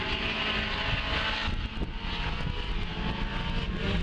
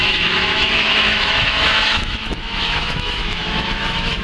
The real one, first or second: first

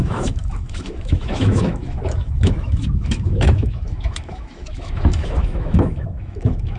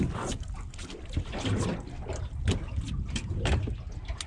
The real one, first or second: second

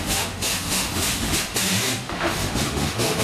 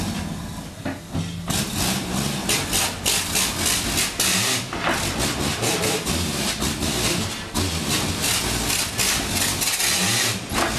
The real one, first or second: second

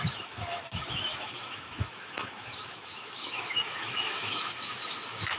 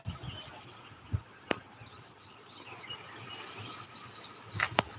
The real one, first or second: second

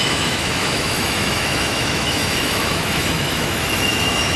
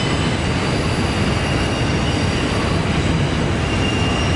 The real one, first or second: second